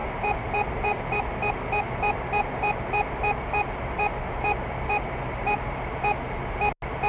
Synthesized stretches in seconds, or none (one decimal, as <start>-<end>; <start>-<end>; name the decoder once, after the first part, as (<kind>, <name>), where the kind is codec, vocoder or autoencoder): none